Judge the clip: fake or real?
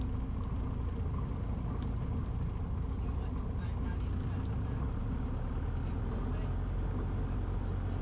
real